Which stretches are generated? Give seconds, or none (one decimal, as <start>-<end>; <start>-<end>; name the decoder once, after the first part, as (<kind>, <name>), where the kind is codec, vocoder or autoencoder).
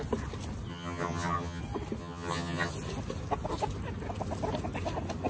0.7-1.6 (vocoder, HiFi-GAN); 2.0-2.7